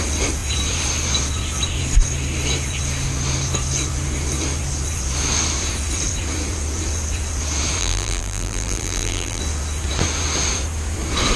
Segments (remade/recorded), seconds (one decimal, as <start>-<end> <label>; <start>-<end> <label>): 0.0-7.8 recorded; 7.8-9.4 remade; 9.4-11.4 recorded